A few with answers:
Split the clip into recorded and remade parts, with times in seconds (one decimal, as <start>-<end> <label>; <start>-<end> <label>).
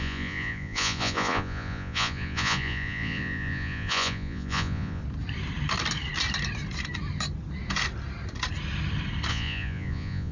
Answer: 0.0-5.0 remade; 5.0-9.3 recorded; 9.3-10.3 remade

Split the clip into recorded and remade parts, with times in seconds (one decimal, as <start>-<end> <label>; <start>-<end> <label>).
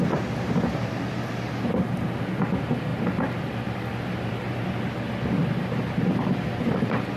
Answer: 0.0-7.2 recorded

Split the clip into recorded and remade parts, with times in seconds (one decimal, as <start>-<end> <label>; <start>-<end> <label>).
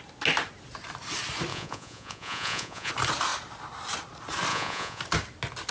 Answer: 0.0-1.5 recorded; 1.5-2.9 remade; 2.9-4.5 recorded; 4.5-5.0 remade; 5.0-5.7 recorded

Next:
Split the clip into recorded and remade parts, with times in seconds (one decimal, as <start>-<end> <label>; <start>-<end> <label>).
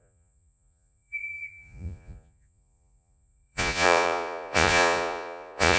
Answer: 0.0-5.8 remade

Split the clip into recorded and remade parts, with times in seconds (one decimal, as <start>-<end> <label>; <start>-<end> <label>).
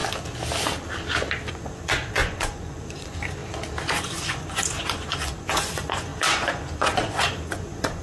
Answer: 0.0-1.5 recorded; 1.5-3.4 remade; 3.4-4.0 recorded; 4.0-8.0 remade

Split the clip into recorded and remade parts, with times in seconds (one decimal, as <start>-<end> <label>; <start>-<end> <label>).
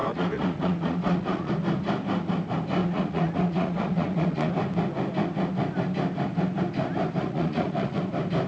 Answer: 0.0-1.5 remade; 1.5-2.8 recorded; 2.8-4.5 remade; 4.5-7.2 recorded; 7.2-8.0 remade; 8.0-8.5 recorded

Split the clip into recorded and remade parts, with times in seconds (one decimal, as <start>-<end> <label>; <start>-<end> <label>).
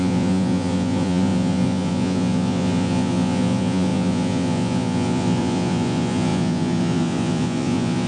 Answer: 0.0-8.1 remade